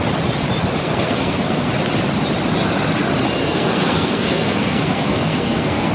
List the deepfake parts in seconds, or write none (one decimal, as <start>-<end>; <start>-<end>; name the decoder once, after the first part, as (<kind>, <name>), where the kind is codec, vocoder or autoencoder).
0.8-1.7 (codec, SNAC); 3.4-5.9